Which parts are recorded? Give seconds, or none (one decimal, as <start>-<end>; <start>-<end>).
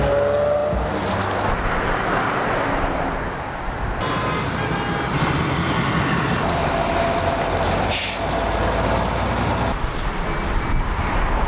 0.0-11.5